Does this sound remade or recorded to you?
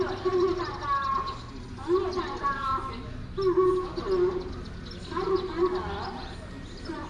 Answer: recorded